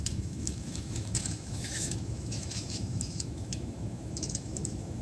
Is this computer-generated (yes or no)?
yes